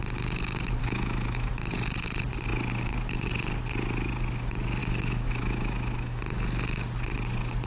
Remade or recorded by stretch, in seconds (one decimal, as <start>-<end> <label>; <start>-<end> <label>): 0.0-0.8 recorded; 0.8-1.5 remade; 1.5-4.8 recorded; 4.8-6.2 remade; 6.2-7.7 recorded